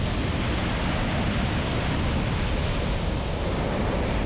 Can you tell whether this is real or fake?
real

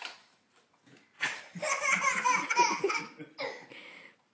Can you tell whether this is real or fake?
real